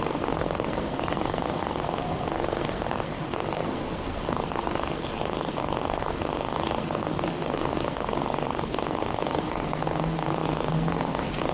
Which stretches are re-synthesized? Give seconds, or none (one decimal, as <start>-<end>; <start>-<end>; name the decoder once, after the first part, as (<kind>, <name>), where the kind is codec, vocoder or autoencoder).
0.0-11.5 (codec, SNAC)